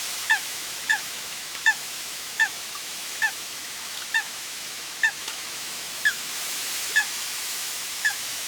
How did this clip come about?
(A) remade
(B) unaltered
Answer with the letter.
A